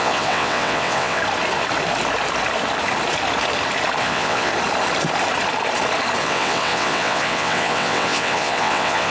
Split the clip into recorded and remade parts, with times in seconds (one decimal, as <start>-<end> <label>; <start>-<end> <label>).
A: 0.0-1.2 remade; 1.2-4.0 recorded; 4.0-4.5 remade; 4.5-6.2 recorded; 6.2-9.1 remade